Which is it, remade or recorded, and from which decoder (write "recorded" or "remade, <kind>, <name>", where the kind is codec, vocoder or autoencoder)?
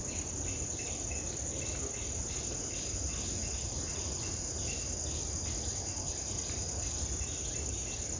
recorded